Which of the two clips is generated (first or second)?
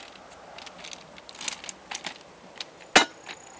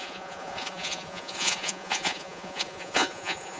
second